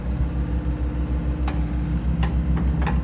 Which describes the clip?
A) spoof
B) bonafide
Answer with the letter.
B